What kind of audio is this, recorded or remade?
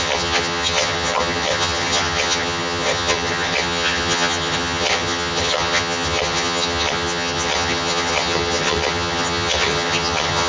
remade